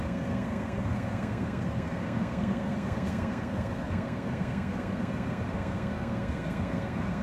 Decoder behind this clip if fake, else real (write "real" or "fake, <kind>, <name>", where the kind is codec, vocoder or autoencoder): fake, codec, SNAC